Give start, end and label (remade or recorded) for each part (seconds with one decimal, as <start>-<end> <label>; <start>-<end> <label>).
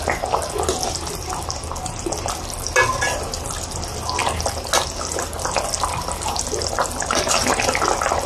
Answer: 0.0-8.3 recorded